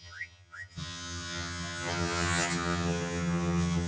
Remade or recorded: remade